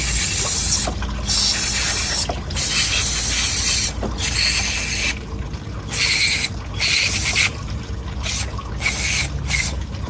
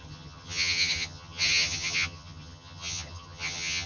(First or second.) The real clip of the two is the first